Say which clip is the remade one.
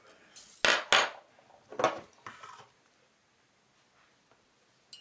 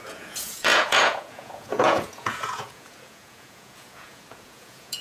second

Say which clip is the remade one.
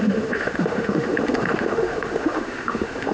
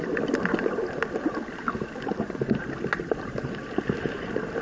first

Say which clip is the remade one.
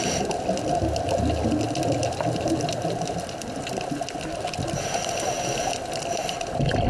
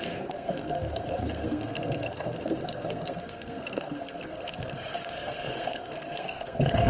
second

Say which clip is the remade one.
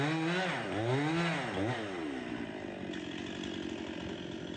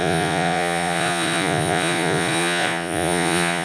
second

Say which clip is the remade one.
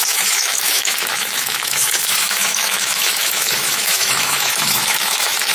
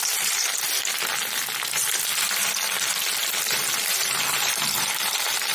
first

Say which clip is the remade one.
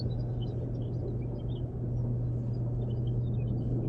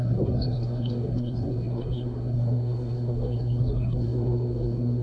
second